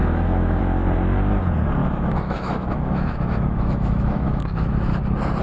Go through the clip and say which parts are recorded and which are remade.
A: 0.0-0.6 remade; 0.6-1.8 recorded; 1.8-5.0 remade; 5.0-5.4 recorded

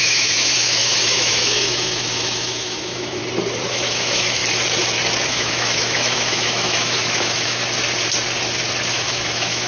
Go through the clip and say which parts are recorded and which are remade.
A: 0.0-3.2 remade; 3.2-3.7 recorded; 3.7-4.4 remade; 4.4-5.3 recorded; 5.3-7.6 remade; 7.6-8.9 recorded; 8.9-9.7 remade

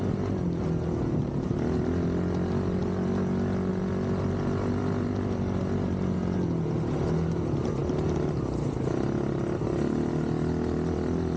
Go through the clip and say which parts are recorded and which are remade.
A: 0.0-11.4 recorded

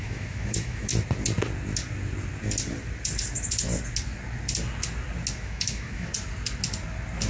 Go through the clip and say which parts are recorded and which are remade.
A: 0.0-0.9 remade; 0.9-5.3 recorded; 5.3-6.1 remade; 6.1-7.3 recorded

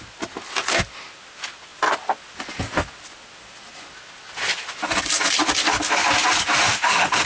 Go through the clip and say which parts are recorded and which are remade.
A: 0.0-6.6 recorded; 6.6-7.3 remade

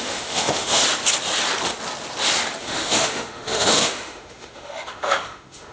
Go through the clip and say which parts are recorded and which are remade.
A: 0.0-0.8 remade; 0.8-2.6 recorded; 2.6-5.7 remade

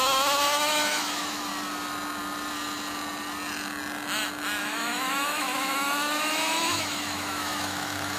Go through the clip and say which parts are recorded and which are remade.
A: 0.0-1.5 remade; 1.5-4.6 recorded; 4.6-8.2 remade